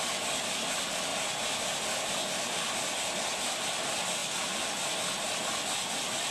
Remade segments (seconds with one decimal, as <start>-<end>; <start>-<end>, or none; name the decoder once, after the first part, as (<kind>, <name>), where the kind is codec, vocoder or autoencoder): none